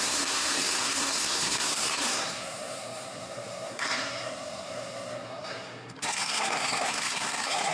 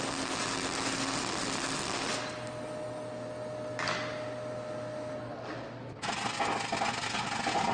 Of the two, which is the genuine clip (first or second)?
second